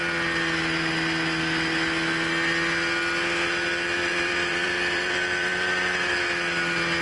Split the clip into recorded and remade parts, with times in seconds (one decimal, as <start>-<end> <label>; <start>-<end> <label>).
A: 0.0-4.0 recorded; 4.0-6.2 remade; 6.2-7.0 recorded